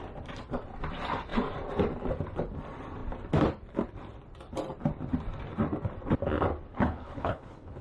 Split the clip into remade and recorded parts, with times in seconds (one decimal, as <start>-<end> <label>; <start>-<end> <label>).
0.0-6.7 recorded; 6.7-7.8 remade